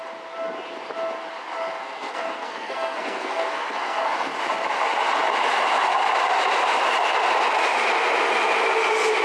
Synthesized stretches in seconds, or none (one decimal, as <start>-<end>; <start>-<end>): 1.8-4.3